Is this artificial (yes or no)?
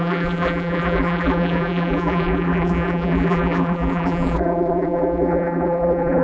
yes